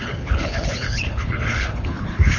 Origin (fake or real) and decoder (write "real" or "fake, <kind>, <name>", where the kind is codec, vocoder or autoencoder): fake, codec, HILCodec